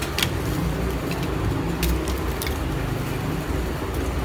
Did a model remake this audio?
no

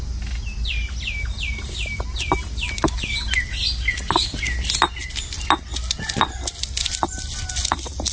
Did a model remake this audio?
no